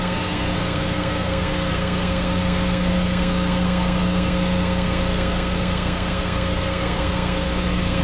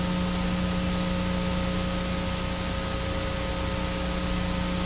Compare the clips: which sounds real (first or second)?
second